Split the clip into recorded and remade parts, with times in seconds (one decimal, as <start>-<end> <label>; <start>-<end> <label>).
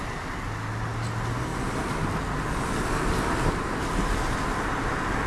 0.0-5.3 recorded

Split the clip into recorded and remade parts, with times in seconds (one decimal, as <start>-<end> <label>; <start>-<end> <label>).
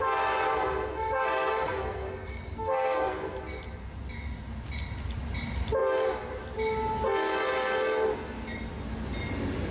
0.0-0.9 recorded; 0.9-3.4 remade; 3.4-9.7 recorded